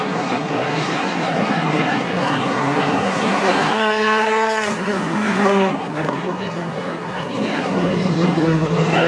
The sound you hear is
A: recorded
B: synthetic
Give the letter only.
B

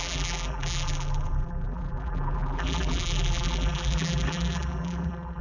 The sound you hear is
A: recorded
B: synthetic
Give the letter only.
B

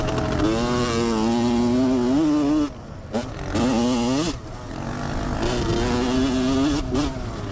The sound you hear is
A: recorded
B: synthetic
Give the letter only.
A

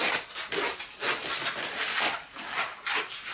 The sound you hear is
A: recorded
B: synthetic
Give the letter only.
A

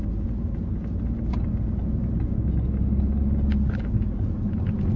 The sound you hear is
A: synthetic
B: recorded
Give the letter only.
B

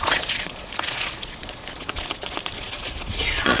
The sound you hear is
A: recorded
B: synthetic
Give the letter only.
B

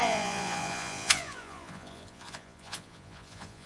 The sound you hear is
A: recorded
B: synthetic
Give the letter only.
B